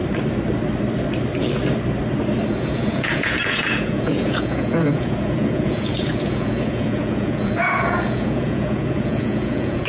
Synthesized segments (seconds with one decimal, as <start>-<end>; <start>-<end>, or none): 2.5-9.9